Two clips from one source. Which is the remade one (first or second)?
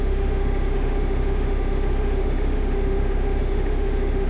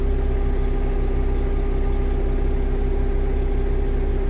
first